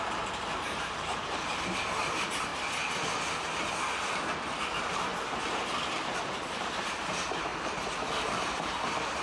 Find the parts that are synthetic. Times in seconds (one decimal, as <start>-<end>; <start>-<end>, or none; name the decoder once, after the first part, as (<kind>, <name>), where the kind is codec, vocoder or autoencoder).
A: 0.0-2.5 (vocoder, BigVGAN v2); 4.6-5.1; 6.5-7.5; 8.2-9.2